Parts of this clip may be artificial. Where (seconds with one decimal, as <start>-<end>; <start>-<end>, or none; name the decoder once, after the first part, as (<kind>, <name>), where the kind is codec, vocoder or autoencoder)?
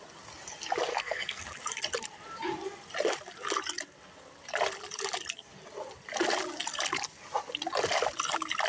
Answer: 0.9-1.4 (codec, SNAC)